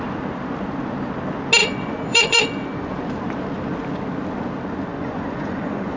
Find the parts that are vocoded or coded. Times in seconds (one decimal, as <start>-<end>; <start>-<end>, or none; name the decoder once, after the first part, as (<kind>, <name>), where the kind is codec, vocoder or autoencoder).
1.6-2.9 (vocoder, Vocos); 4.9-6.0